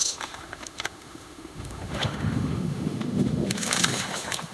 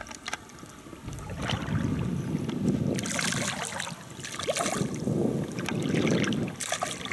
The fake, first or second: first